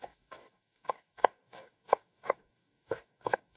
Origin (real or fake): fake